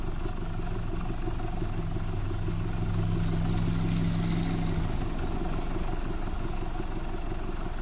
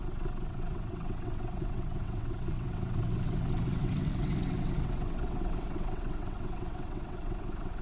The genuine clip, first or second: first